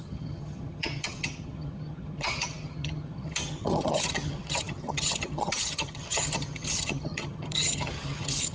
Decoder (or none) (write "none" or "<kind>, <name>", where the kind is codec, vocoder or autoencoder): vocoder, HiFi-GAN